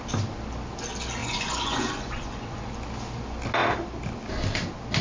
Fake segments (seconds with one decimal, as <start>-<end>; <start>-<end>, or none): 1.2-2.7